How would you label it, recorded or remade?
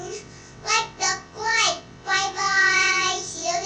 remade